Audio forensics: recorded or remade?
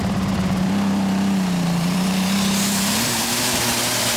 remade